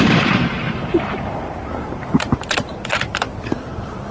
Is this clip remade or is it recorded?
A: remade